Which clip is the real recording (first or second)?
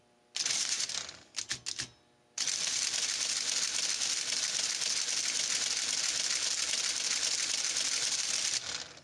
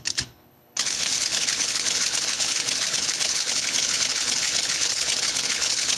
first